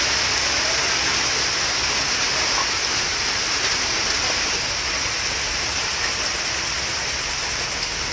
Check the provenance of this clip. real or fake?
real